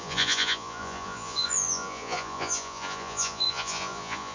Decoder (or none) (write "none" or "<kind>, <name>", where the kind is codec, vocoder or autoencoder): vocoder, Vocos